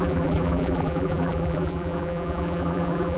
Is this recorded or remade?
remade